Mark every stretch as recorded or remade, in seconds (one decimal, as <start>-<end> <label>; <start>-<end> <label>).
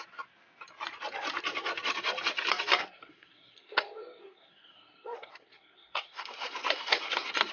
0.0-2.8 recorded; 2.8-7.5 remade